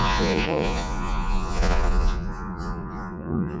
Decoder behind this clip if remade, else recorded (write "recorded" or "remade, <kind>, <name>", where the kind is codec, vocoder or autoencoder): remade, vocoder, Vocos